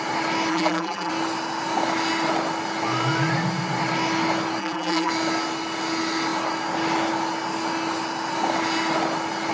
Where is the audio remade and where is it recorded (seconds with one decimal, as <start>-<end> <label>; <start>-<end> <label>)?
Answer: 0.0-0.5 recorded; 0.5-1.1 remade; 1.1-4.6 recorded; 4.6-5.1 remade; 5.1-9.5 recorded